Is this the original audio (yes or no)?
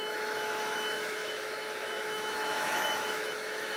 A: no